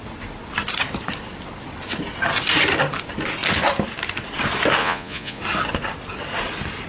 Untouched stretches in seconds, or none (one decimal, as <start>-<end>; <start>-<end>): 0.0-4.8; 5.4-6.9